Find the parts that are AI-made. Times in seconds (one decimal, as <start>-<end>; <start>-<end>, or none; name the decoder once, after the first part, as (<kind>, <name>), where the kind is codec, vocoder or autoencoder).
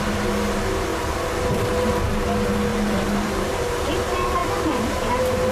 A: 0.9-2.0 (vocoder, BigVGAN v2); 2.7-3.9; 4.4-5.5